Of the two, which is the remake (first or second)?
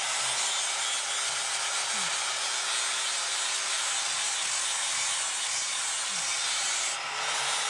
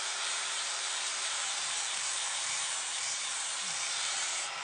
second